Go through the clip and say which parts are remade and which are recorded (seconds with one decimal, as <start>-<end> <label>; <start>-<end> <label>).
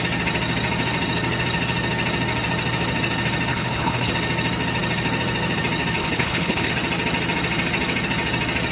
0.0-3.5 recorded; 3.5-4.1 remade; 4.1-6.0 recorded; 6.0-6.7 remade; 6.7-8.7 recorded